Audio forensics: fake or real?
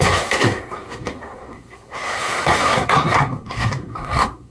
fake